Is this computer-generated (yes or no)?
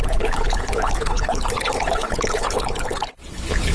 yes